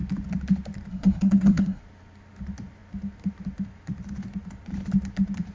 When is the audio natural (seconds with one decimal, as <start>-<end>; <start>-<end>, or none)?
0.0-0.9; 1.8-5.5

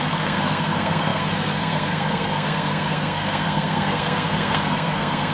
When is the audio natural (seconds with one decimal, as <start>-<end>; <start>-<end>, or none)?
none

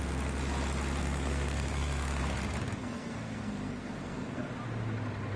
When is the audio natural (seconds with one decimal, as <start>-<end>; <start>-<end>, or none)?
0.0-1.0; 2.2-2.8; 4.5-5.4

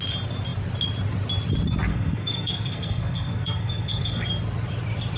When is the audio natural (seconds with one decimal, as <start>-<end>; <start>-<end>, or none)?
0.0-1.9; 4.3-5.2